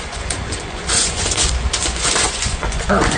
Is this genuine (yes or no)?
no